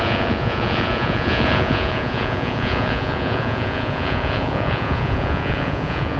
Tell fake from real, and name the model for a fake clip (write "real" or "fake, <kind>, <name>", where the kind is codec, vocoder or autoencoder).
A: fake, vocoder, Vocos